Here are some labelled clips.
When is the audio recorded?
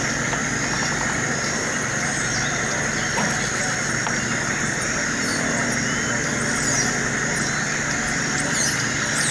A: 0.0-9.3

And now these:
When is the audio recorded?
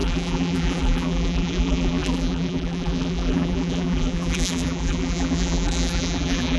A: none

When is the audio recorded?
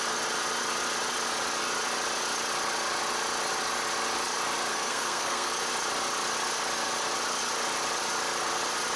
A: 0.0-4.7; 5.5-9.0